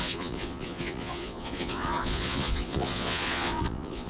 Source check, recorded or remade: remade